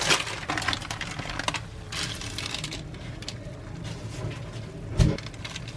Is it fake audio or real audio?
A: real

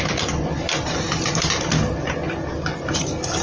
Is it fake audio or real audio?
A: real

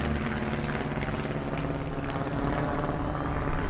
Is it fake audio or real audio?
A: real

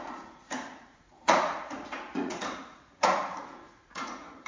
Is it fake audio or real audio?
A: fake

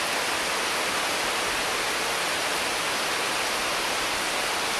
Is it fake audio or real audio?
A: real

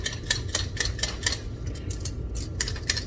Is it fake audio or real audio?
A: real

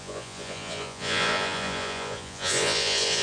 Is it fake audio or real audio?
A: fake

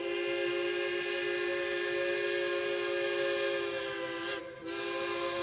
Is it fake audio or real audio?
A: real